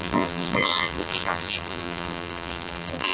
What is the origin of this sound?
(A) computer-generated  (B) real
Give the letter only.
A